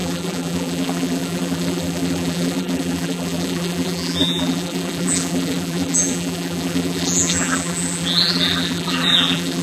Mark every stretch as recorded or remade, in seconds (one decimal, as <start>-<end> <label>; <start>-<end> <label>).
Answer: 0.0-9.6 remade